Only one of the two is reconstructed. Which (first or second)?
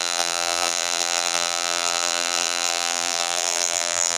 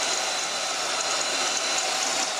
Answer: first